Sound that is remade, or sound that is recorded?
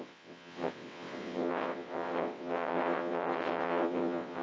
remade